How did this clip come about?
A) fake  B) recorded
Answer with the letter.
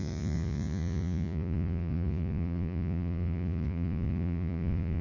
A